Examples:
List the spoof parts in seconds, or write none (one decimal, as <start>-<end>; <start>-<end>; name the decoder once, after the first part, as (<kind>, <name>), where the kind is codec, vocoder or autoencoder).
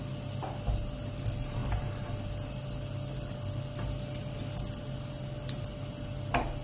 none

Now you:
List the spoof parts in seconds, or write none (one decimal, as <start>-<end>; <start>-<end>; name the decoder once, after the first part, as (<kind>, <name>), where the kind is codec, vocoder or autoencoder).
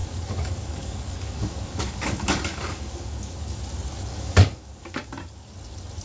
0.0-3.6 (codec, DAC); 4.1-5.1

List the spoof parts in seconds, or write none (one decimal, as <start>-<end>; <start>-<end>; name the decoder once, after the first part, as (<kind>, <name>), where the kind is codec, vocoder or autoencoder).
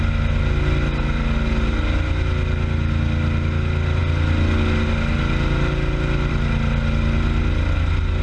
none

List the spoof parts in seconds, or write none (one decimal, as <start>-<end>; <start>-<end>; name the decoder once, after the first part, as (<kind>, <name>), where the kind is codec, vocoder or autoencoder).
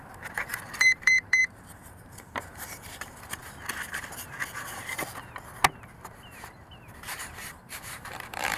0.0-3.4 (vocoder, BigVGAN v2); 6.5-8.6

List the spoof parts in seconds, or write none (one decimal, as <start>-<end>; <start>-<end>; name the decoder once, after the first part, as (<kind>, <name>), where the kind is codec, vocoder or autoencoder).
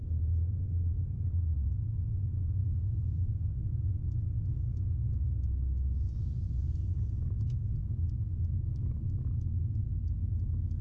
2.6-3.6 (codec, DAC); 7.8-10.2